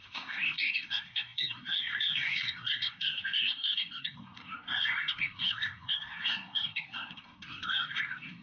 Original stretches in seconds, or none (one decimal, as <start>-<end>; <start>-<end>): none